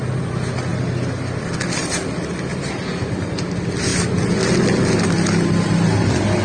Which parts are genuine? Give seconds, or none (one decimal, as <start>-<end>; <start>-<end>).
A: 0.0-6.4